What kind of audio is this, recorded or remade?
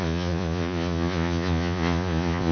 remade